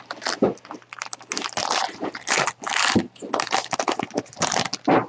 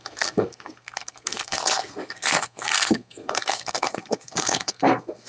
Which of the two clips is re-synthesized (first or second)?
second